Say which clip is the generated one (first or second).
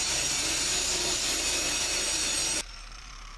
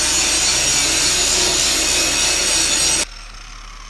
first